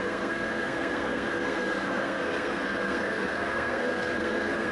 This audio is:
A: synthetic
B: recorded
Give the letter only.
A